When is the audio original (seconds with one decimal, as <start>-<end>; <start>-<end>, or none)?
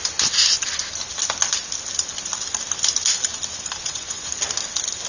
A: 0.0-3.8; 4.3-5.1